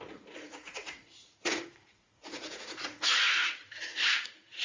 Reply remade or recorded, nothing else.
remade